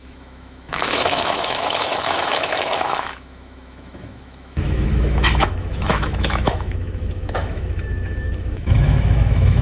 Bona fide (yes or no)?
no